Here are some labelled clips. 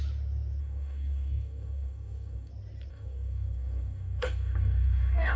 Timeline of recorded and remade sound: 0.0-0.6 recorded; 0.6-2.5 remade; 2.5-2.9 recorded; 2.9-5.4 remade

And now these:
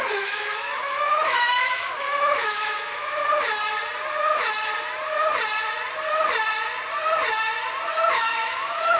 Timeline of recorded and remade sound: 0.0-3.2 remade; 3.2-8.1 recorded; 8.1-9.0 remade